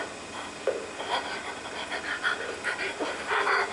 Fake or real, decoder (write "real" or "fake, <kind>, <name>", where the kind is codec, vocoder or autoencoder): real